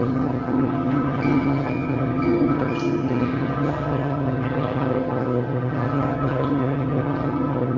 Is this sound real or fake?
fake